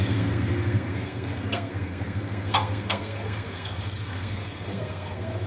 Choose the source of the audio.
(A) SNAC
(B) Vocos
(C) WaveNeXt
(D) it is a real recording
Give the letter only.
A